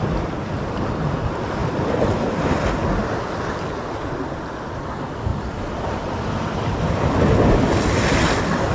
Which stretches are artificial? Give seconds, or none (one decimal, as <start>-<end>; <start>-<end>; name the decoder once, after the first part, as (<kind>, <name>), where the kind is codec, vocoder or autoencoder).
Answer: 1.6-2.3 (vocoder, BigVGAN v2); 5.3-6.9